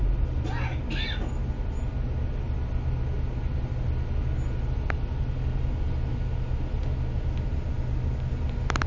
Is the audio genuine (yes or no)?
yes